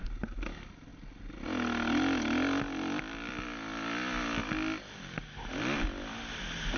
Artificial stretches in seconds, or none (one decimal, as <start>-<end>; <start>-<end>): none